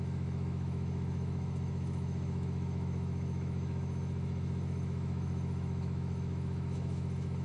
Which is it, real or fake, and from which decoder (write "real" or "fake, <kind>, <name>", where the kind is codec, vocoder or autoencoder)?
fake, autoencoder, DAC-VAE